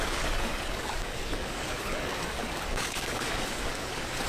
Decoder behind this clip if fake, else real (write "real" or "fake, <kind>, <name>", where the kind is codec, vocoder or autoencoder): fake, codec, DAC